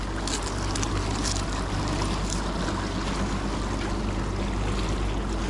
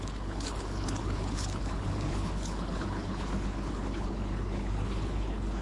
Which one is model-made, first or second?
second